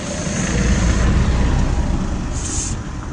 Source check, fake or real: real